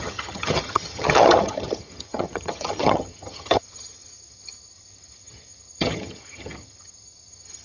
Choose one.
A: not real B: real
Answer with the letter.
A